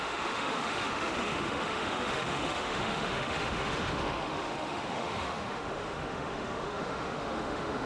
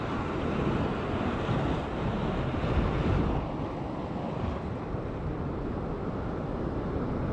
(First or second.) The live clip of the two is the second